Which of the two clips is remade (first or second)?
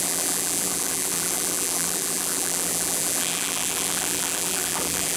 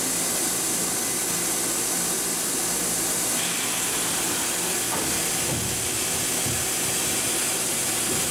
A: first